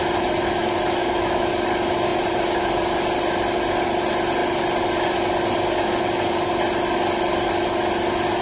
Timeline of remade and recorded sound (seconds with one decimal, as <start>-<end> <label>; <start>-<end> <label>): 0.0-1.0 recorded; 1.0-1.5 remade; 1.5-8.4 recorded